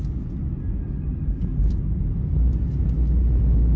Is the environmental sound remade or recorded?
recorded